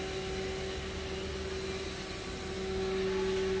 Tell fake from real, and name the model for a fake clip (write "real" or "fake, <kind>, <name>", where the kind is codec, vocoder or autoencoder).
real